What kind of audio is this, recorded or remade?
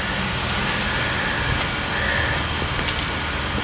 recorded